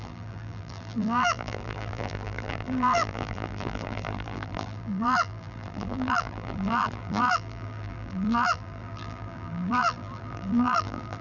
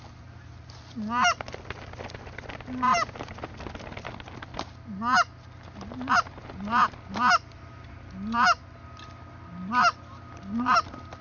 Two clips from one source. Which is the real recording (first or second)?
second